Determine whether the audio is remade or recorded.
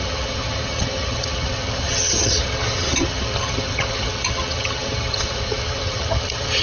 remade